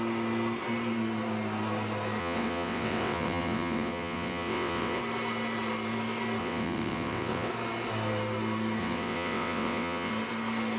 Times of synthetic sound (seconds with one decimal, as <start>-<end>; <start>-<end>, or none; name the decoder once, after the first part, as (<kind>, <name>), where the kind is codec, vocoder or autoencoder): 2.2-5.0 (vocoder, WaveNeXt); 6.4-7.5; 8.8-10.1